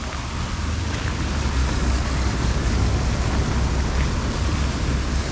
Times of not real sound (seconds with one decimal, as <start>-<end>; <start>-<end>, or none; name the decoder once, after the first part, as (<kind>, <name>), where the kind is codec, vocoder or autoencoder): 1.6-2.9 (codec, DAC)